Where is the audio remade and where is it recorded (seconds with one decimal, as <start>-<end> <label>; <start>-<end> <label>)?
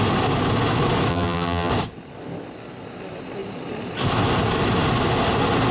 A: 0.0-1.1 recorded; 1.1-1.7 remade; 1.7-5.7 recorded